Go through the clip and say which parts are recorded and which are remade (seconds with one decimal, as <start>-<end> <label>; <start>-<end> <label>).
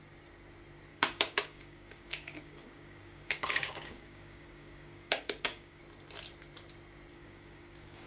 0.0-0.9 recorded; 0.9-5.8 remade; 5.8-7.1 recorded; 7.1-8.1 remade